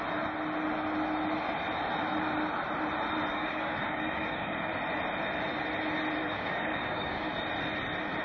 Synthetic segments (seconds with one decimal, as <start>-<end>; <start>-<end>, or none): 3.3-4.7; 6.2-7.3